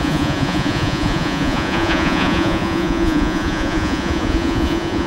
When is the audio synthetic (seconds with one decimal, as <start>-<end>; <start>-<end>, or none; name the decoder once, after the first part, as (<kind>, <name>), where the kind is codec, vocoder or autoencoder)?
0.0-5.1 (vocoder, Vocos)